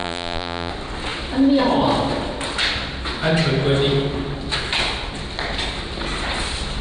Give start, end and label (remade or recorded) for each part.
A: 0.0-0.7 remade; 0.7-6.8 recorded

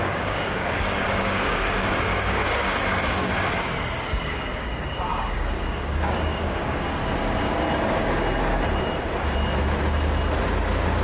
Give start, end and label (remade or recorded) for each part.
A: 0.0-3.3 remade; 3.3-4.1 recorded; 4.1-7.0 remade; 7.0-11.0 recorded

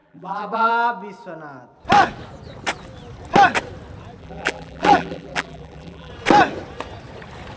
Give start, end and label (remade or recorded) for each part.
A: 0.0-0.7 remade; 0.7-4.2 recorded; 4.2-6.1 remade; 6.1-7.6 recorded

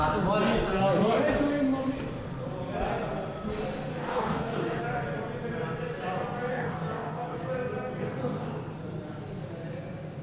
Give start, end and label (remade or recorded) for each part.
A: 0.0-4.0 recorded; 4.0-4.8 remade; 4.8-6.5 recorded; 6.5-7.4 remade; 7.4-10.2 recorded

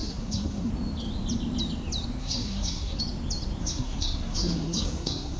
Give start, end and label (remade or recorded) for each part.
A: 0.0-0.7 remade; 0.7-2.2 recorded; 2.2-3.0 remade; 3.0-3.6 recorded; 3.6-5.4 remade